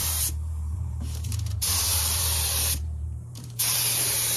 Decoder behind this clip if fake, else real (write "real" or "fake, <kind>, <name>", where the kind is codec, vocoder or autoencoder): fake, vocoder, BigVGAN v2